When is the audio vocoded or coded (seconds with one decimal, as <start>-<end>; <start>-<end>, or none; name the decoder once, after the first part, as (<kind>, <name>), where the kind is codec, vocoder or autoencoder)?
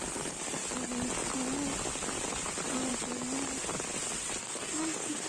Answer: 4.4-5.3 (codec, DAC)